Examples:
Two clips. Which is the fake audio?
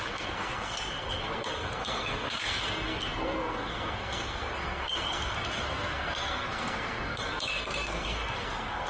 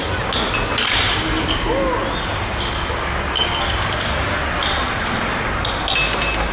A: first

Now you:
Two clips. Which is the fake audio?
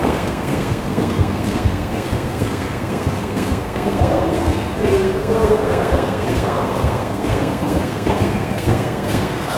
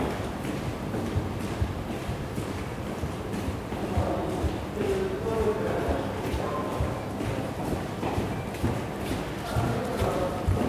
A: first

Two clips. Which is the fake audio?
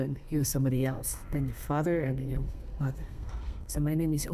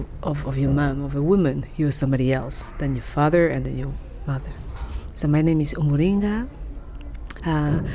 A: first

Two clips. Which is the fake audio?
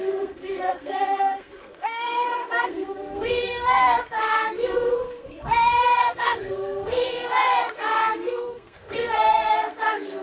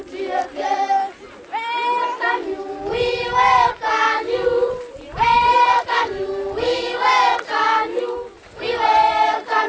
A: first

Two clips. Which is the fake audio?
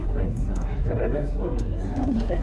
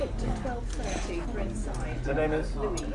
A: first